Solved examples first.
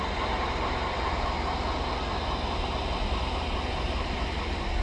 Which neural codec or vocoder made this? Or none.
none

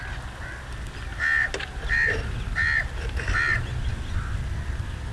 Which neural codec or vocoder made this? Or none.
none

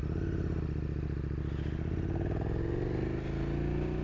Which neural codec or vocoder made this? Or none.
none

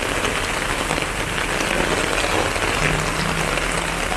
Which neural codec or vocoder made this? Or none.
none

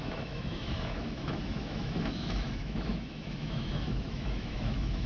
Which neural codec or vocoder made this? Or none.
autoencoder, DAC-VAE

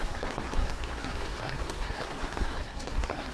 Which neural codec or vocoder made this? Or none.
codec, SNAC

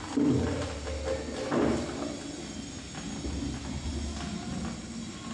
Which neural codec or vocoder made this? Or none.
none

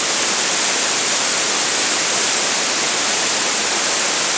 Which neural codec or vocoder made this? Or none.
none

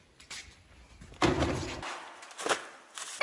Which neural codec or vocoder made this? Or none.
none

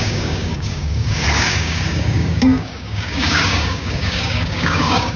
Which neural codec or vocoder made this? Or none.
codec, DAC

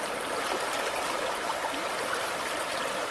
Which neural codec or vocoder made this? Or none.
none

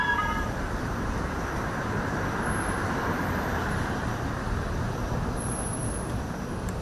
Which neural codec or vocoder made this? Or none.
vocoder, BigVGAN v2